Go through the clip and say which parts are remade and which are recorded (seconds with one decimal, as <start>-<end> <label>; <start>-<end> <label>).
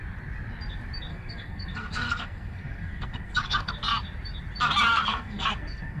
0.0-1.1 recorded; 1.1-3.7 remade; 3.7-4.9 recorded; 4.9-6.0 remade